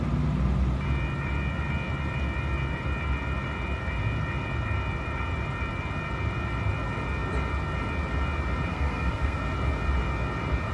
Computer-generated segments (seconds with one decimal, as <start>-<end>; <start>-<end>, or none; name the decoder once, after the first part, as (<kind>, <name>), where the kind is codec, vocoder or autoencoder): 8.7-9.4 (codec, SNAC)